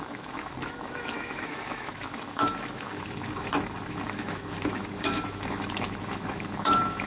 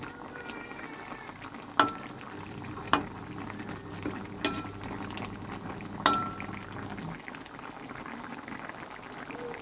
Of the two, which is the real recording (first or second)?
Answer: second